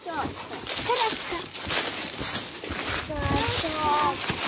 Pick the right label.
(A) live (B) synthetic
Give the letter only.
A